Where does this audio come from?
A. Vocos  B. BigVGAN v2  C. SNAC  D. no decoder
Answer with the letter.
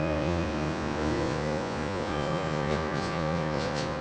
A